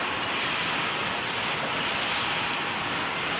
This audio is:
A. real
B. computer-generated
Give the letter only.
A